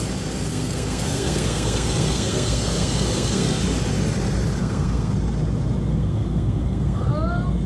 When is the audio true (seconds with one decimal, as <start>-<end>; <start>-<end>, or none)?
0.0-0.5; 3.6-4.6; 5.1-5.9; 7.1-7.7